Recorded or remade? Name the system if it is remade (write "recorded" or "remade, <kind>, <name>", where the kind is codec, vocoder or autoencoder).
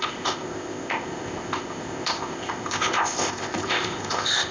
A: remade, codec, ZipCodec